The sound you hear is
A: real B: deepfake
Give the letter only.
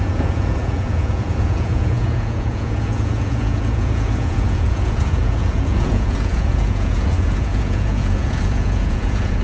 B